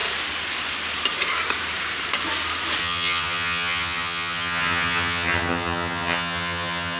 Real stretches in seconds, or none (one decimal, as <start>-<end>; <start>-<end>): 0.0-2.8